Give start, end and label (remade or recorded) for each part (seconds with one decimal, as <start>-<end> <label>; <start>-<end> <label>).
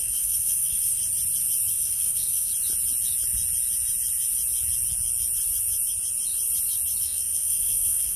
0.0-1.0 remade; 1.0-1.7 recorded; 1.7-2.5 remade; 2.5-7.0 recorded; 7.0-8.2 remade